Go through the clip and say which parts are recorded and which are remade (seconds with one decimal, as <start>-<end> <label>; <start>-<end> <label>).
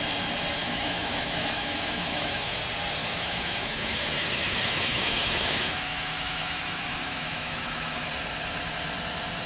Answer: 0.0-0.6 recorded; 0.6-2.6 remade; 2.6-3.0 recorded; 3.0-8.1 remade; 8.1-9.5 recorded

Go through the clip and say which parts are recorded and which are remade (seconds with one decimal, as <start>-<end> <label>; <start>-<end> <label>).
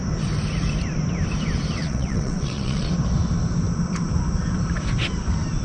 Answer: 0.0-1.8 recorded; 1.8-2.9 remade; 2.9-5.6 recorded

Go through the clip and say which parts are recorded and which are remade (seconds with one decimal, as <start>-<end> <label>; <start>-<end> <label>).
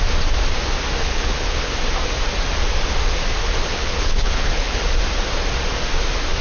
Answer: 0.0-1.0 recorded; 1.0-1.7 remade; 1.7-3.4 recorded; 3.4-4.8 remade; 4.8-6.4 recorded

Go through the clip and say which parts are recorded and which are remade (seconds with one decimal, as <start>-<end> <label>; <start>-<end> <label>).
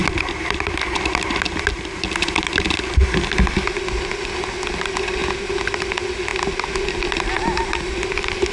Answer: 0.0-8.5 recorded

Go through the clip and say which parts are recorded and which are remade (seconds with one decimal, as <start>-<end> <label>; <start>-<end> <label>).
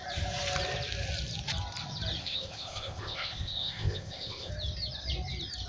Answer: 0.0-2.2 recorded; 2.2-4.5 remade; 4.5-5.7 recorded